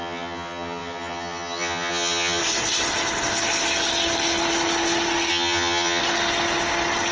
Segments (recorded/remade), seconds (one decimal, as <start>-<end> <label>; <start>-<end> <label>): 0.0-2.4 remade; 2.4-5.3 recorded; 5.3-6.0 remade; 6.0-7.1 recorded